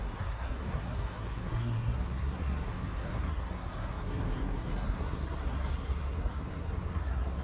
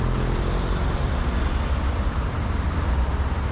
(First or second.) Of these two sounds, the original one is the second